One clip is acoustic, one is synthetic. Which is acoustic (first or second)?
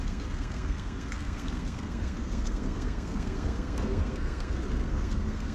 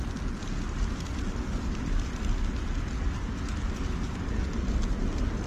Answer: second